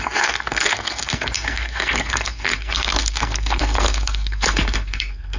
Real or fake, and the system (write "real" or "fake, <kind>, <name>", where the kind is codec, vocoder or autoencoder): fake, codec, SNAC